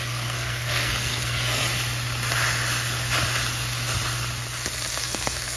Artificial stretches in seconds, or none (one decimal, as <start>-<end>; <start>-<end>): 0.0-1.6; 5.0-5.6